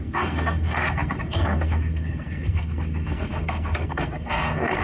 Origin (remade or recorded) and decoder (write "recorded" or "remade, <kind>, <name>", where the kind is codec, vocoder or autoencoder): remade, codec, SNAC